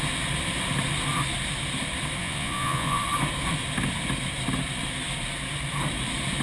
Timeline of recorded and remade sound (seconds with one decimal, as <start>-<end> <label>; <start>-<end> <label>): 0.0-2.2 recorded; 2.2-3.0 remade; 3.0-6.4 recorded